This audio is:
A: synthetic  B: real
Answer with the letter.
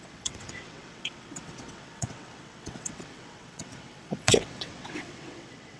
A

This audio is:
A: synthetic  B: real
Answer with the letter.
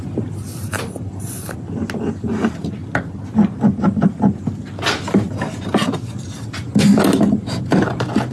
B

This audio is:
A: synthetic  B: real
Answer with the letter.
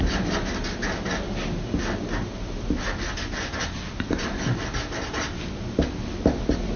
B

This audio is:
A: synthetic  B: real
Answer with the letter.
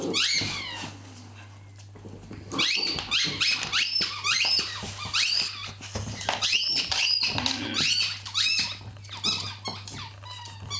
B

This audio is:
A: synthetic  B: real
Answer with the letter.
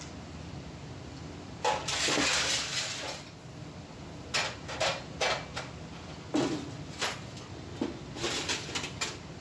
B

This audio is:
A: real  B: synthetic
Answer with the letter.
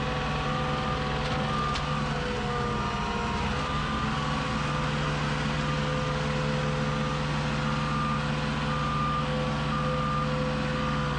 A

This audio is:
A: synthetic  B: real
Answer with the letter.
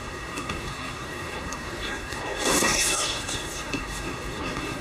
A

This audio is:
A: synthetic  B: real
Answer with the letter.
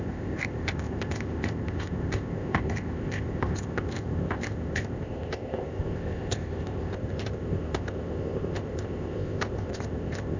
A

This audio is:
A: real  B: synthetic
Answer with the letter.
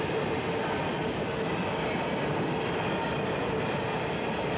A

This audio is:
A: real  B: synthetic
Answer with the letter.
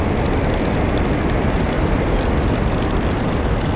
A